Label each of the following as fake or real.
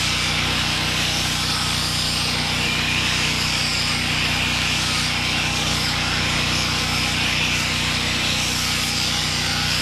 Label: fake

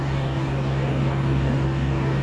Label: fake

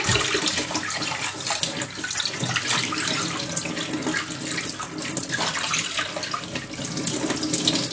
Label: real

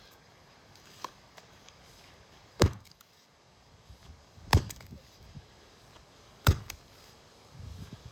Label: fake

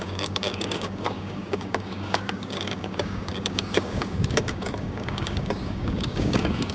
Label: fake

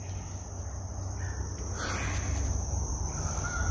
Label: real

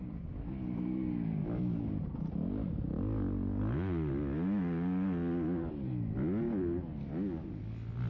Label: real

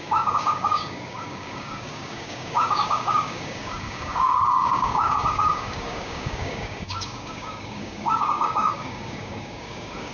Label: fake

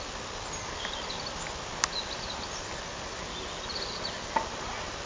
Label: real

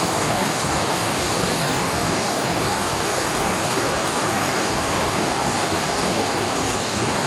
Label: fake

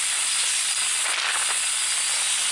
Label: real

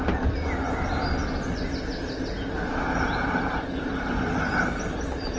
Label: real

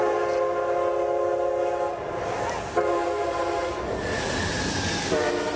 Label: real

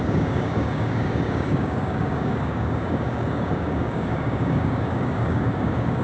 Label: fake